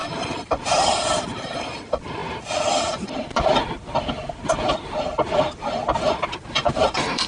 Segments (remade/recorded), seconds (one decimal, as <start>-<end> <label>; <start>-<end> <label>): 0.0-2.2 remade; 2.2-2.8 recorded; 2.8-3.6 remade; 3.6-6.4 recorded; 6.4-7.3 remade